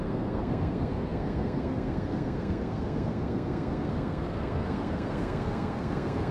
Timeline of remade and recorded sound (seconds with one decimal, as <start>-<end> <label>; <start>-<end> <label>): 0.0-6.3 remade